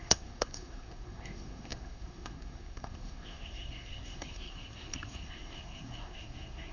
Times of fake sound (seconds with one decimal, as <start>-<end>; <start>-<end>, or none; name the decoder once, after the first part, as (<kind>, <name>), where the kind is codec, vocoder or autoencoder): 0.0-6.7 (codec, SNAC)